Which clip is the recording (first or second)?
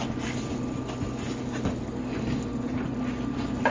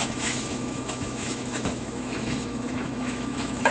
first